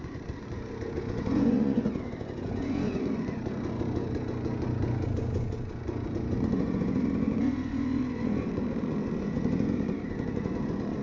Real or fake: fake